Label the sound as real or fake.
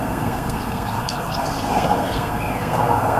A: fake